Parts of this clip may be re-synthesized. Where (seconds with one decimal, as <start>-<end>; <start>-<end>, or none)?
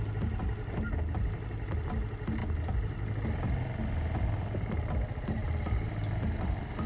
none